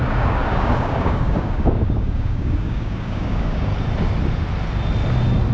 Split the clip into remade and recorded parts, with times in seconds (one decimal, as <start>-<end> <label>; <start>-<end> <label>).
0.0-3.7 remade; 3.7-5.5 recorded

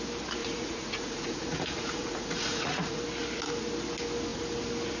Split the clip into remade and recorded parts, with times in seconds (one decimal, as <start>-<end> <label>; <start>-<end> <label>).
0.0-0.4 recorded; 0.4-3.0 remade; 3.0-5.0 recorded